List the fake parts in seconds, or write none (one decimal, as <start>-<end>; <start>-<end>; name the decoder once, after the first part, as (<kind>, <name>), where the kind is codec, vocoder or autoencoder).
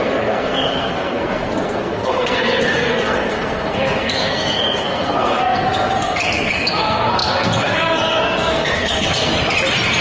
0.0-9.3 (codec, SNAC)